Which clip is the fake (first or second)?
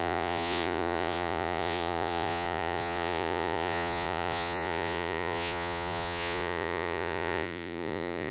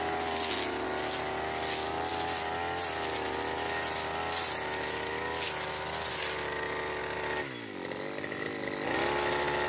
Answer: first